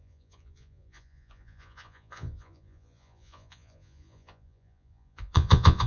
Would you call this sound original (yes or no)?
no